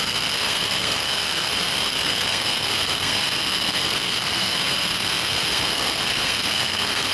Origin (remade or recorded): remade